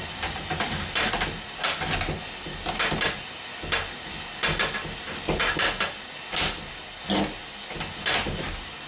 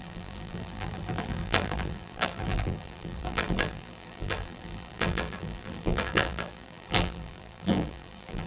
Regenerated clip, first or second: second